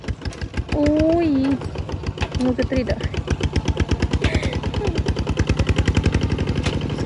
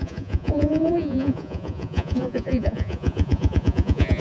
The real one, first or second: first